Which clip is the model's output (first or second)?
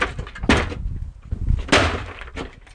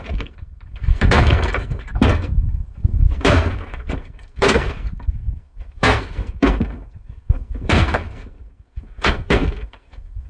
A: second